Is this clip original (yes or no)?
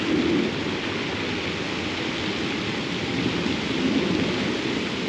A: yes